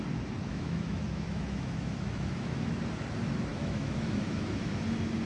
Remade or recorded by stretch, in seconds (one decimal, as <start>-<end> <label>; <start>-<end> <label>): 0.0-0.5 recorded; 0.5-2.8 remade; 2.8-3.5 recorded; 3.5-4.8 remade; 4.8-5.3 recorded